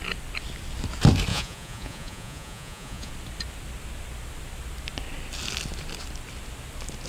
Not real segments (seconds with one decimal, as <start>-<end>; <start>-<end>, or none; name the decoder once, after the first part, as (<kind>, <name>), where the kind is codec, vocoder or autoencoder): 1.3-3.1 (vocoder, Vocos)